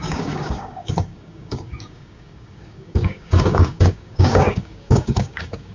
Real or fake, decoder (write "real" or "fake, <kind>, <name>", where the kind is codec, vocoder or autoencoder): fake, codec, DAC